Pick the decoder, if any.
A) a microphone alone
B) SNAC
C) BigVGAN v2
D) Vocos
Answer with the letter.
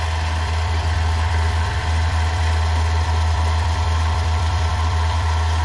C